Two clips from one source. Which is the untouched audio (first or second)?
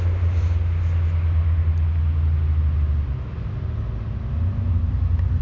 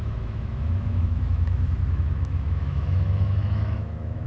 first